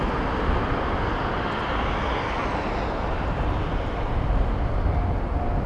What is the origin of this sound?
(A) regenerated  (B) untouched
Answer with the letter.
B